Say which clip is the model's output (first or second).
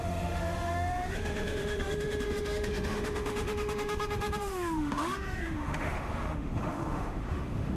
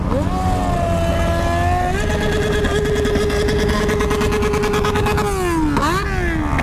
first